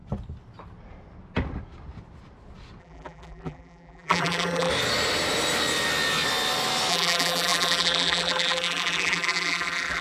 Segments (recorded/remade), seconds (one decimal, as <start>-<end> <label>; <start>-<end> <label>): 0.0-2.8 recorded; 2.8-4.7 remade; 4.7-6.9 recorded; 6.9-10.0 remade